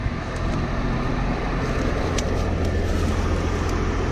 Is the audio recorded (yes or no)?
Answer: yes